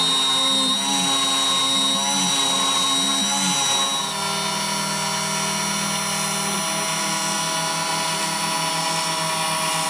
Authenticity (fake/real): real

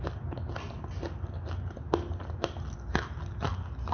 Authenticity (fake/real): real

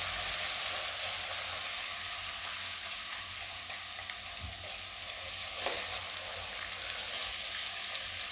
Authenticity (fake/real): real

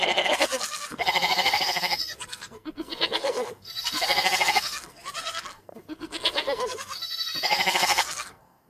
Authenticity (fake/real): fake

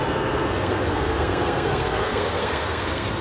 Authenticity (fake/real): fake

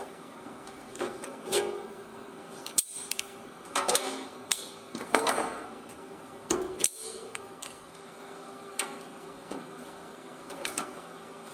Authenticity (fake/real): fake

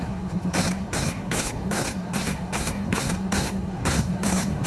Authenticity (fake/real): fake